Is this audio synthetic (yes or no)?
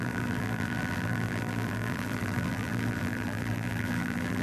yes